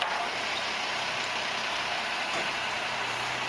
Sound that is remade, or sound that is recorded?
remade